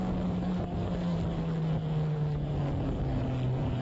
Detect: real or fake fake